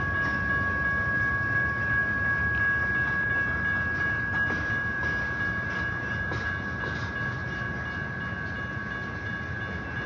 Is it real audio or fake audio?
real